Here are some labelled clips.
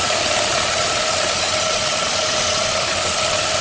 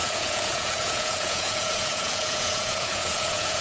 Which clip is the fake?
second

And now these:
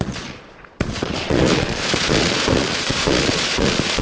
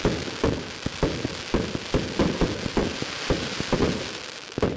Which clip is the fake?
first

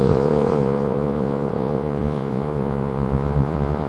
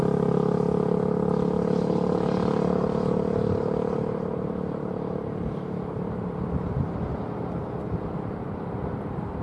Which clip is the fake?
first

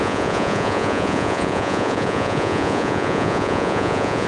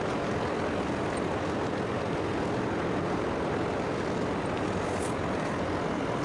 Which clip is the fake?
first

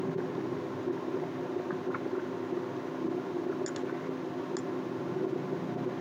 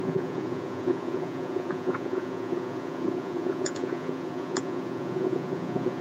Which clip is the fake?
second